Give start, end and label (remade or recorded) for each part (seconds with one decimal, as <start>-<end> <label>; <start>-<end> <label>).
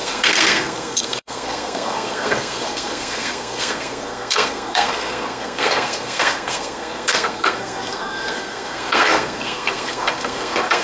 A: 0.0-10.8 remade